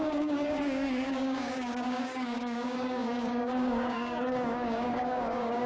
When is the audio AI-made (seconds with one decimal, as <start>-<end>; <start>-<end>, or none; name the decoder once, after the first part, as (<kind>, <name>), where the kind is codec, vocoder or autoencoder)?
0.0-5.7 (codec, DAC)